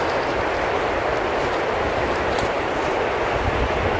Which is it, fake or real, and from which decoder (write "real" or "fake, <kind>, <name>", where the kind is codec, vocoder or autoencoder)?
real